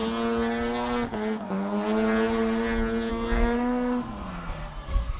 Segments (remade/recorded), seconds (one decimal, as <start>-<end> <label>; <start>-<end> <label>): 0.0-3.1 recorded; 3.1-5.2 remade